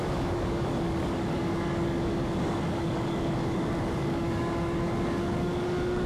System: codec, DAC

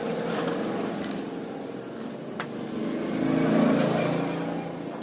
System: none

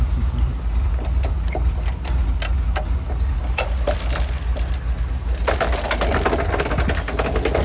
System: none